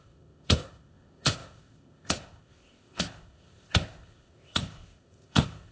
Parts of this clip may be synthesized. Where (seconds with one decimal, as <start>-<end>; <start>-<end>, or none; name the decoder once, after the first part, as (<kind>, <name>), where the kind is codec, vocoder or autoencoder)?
0.0-5.7 (codec, ZipCodec)